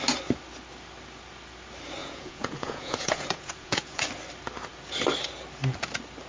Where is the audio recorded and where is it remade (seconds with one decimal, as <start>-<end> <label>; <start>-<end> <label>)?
0.0-2.0 recorded; 2.0-4.0 remade; 4.0-6.3 recorded